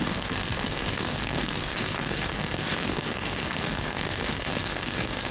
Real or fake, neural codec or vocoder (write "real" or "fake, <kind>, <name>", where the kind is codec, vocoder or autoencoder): fake, codec, SNAC